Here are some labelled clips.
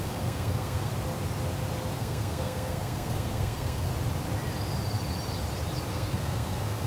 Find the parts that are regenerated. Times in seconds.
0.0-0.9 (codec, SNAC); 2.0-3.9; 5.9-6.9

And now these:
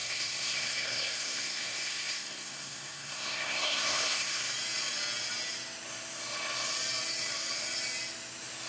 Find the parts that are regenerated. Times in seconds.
0.0-4.5 (codec, SNAC)

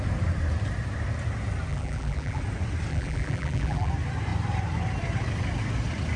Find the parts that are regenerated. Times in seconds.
1.7-2.4 (vocoder, BigVGAN v2); 2.9-3.9

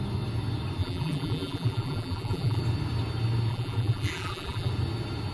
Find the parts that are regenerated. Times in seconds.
0.8-2.6 (vocoder, BigVGAN v2); 3.5-4.7

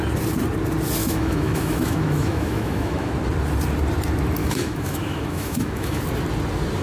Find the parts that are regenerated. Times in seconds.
1.0-3.1 (autoencoder, DAC-VAE); 4.4-6.0